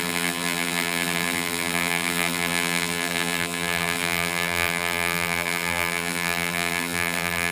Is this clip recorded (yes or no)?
no